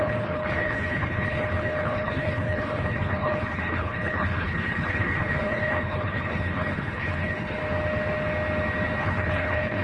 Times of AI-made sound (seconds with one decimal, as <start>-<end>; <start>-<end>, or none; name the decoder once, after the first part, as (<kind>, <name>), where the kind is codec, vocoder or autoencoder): 0.0-7.6 (codec, HILCodec); 9.0-9.8